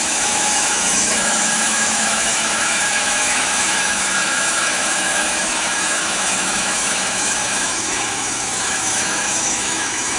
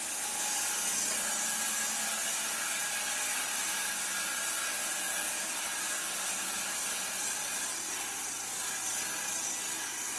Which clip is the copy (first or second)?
first